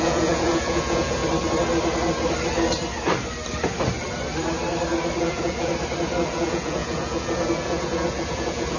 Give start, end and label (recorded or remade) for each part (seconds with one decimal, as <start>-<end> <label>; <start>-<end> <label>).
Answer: 0.0-1.2 remade; 1.2-5.2 recorded; 5.2-5.7 remade; 5.7-6.2 recorded; 6.2-8.8 remade